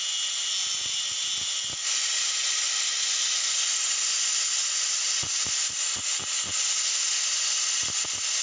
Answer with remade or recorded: recorded